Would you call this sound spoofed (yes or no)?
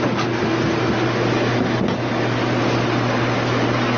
no